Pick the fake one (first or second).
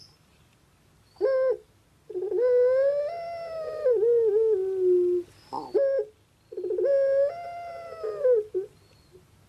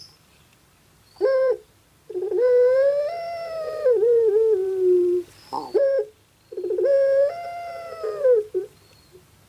second